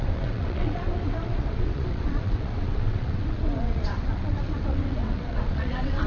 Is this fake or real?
fake